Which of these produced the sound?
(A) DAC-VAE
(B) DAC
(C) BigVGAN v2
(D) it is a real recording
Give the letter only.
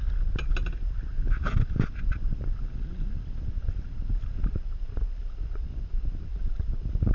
D